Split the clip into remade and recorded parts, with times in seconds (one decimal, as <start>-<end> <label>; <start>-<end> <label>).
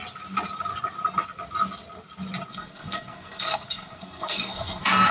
0.0-2.5 recorded; 2.5-5.1 remade